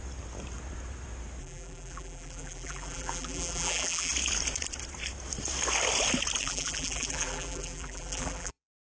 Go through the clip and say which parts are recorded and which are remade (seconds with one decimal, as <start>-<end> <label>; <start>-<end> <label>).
0.0-1.4 recorded; 1.4-4.1 remade; 4.1-6.4 recorded; 6.4-9.0 remade